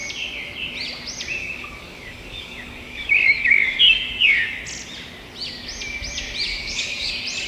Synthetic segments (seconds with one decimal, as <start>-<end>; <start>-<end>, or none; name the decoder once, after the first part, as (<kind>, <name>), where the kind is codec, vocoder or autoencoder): 1.4-4.6 (codec, DAC); 6.5-7.1

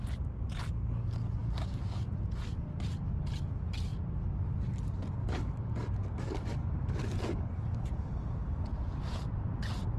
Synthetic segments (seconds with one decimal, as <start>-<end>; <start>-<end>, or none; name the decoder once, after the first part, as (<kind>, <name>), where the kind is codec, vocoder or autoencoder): 1.4-2.1 (codec, DAC); 5.2-7.5

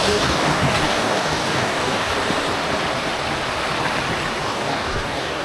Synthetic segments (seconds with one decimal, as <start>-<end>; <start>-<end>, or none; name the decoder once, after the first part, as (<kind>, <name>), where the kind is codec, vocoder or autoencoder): 0.0-2.1 (codec, DAC); 4.4-5.4

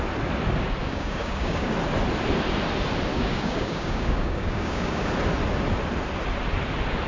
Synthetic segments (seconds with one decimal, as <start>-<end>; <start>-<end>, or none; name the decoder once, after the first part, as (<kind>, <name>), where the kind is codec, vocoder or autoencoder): 0.8-1.7 (codec, DAC); 3.1-5.1

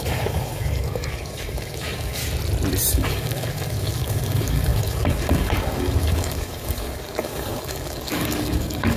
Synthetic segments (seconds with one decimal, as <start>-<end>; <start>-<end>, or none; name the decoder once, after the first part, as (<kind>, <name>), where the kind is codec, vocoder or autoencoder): 0.0-2.2 (codec, DAC); 2.9-9.0